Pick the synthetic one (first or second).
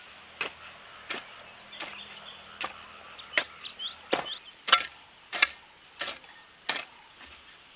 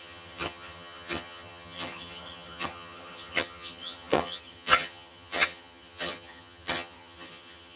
second